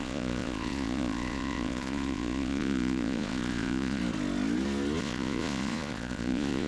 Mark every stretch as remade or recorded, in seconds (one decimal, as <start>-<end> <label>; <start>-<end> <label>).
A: 0.0-4.0 remade; 4.0-5.0 recorded; 5.0-6.7 remade